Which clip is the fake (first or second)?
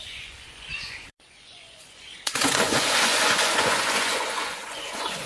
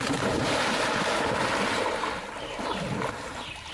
first